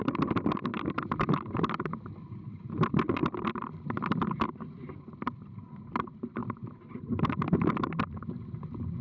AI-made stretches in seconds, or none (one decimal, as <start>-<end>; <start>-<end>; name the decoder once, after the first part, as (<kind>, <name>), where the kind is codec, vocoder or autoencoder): 0.7-2.4 (vocoder, BigVGAN v2); 3.2-5.8; 6.4-8.3